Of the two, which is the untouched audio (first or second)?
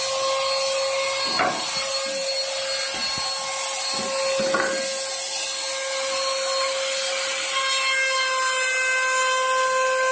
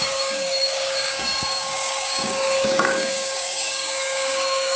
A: first